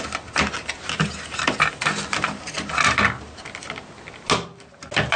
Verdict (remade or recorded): recorded